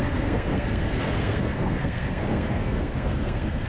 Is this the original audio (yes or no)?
no